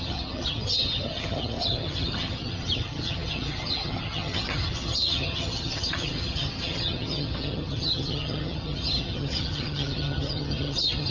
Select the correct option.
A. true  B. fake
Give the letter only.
B